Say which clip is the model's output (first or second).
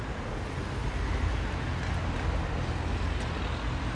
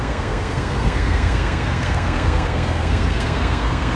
second